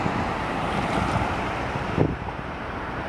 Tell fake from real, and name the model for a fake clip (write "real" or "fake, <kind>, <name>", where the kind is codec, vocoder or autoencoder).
fake, vocoder, BigVGAN v2